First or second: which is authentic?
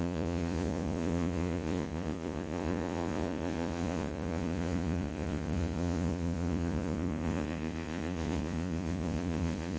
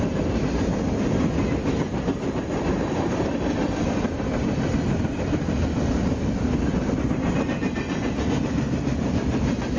second